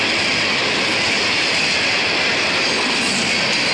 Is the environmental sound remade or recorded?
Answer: remade